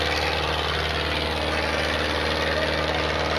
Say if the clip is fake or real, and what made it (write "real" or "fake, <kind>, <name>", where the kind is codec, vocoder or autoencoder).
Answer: real